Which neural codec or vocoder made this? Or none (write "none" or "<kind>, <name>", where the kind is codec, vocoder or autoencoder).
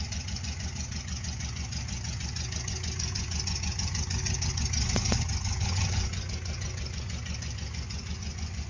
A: vocoder, Vocos